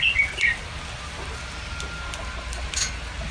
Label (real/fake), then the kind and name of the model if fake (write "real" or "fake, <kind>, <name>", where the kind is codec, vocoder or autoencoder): real